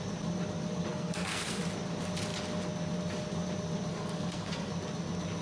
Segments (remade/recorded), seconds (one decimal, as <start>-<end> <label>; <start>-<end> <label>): 0.0-0.9 recorded; 0.9-1.6 remade; 1.6-3.9 recorded; 3.9-4.7 remade; 4.7-5.4 recorded